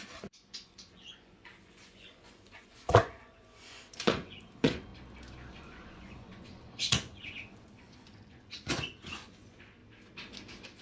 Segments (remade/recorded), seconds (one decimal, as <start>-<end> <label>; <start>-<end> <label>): 0.0-4.9 remade; 4.9-5.5 recorded; 5.5-9.8 remade; 9.8-10.8 recorded